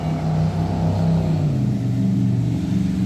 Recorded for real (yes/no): yes